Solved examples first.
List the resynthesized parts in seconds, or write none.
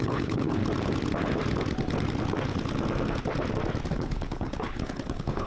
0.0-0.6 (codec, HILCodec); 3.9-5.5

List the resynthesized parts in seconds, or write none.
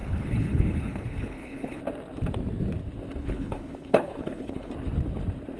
0.0-1.8 (codec, HILCodec); 3.2-4.7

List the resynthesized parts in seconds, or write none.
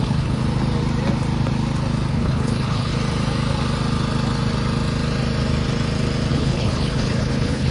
0.0-0.4 (codec, HILCodec); 2.1-2.9; 6.3-7.7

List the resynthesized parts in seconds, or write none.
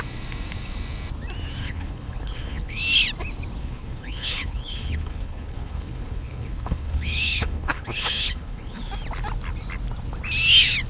1.6-2.8 (codec, HILCodec); 3.6-8.9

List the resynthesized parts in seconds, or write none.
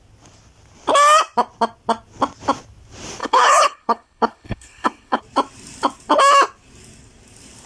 3.2-5.2 (codec, HILCodec)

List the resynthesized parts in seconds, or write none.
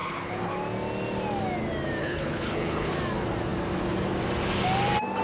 0.0-0.5 (codec, HILCodec); 2.0-2.9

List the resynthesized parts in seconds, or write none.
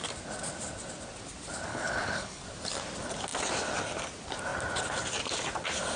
1.7-2.4 (codec, HILCodec)